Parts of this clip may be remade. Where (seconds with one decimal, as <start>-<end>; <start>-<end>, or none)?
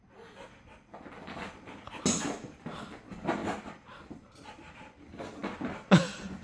none